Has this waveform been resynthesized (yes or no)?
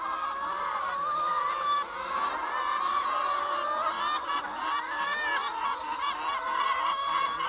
no